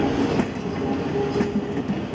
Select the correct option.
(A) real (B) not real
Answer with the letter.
A